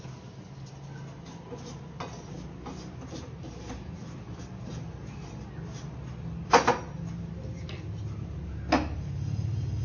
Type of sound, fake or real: real